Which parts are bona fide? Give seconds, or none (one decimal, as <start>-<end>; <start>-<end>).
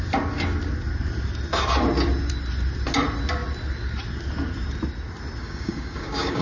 0.0-5.4